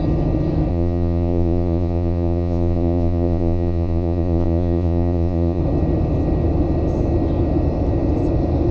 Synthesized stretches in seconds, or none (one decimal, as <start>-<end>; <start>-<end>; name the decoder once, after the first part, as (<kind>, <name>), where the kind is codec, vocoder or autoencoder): 0.7-5.6 (vocoder, Vocos)